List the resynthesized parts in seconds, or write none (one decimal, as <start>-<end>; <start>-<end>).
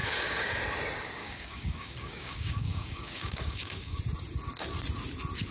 0.0-0.6; 1.2-4.0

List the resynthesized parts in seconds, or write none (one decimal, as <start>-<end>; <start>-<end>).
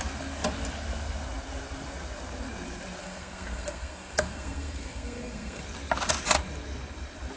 3.0-5.6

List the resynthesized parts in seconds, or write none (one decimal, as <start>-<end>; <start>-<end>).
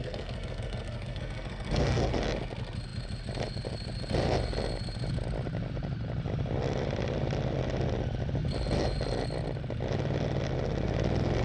0.0-2.1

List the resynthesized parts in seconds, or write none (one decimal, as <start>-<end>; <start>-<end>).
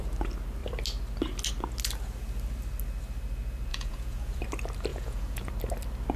3.7-4.4; 4.9-5.5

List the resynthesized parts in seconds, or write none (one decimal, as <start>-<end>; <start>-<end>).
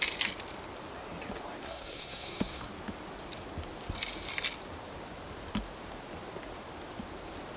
1.6-2.7